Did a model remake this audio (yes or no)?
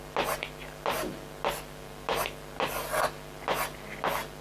no